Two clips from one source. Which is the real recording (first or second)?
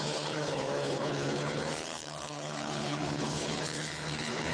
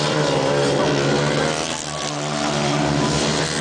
second